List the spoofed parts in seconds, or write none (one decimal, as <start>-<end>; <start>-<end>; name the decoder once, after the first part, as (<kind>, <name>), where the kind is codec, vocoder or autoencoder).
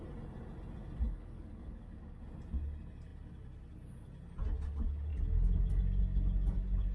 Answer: 1.1-2.2 (codec, DAC)